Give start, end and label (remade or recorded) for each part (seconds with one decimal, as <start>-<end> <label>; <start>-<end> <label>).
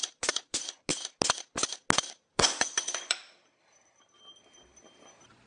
0.0-0.9 remade; 0.9-2.3 recorded; 2.3-3.1 remade; 3.1-5.5 recorded